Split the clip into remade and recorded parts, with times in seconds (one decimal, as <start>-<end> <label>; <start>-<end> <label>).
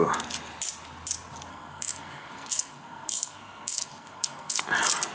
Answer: 0.0-1.5 recorded; 1.5-4.6 remade; 4.6-5.1 recorded